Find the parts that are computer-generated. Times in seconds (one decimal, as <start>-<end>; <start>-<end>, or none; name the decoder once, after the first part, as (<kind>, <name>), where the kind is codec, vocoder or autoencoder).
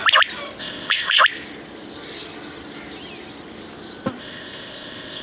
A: 0.6-1.2 (codec, ZipCodec); 4.2-5.2